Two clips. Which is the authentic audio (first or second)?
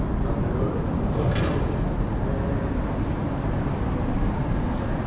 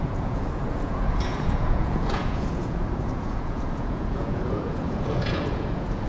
first